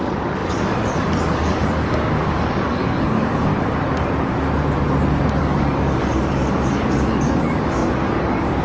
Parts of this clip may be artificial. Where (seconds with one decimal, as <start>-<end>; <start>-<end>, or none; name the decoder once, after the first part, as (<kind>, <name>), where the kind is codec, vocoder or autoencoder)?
0.0-3.5 (codec, DAC); 5.4-8.6